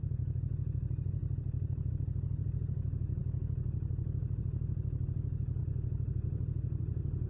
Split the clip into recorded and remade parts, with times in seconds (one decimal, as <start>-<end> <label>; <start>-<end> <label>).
0.0-1.2 recorded; 1.2-1.9 remade; 1.9-5.6 recorded; 5.6-7.3 remade